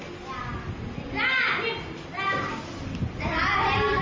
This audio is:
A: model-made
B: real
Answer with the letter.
B